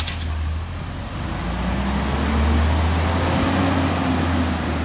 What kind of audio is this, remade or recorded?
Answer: recorded